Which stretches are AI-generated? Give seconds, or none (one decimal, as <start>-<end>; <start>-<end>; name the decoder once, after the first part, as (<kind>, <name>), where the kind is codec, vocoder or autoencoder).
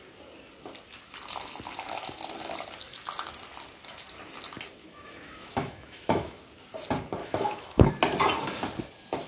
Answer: 4.8-6.4 (autoencoder, DAC-VAE); 7.2-7.9